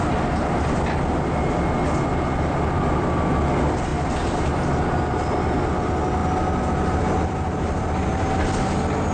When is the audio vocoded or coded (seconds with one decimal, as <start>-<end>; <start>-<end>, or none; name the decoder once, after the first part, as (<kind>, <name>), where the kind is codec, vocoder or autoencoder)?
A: none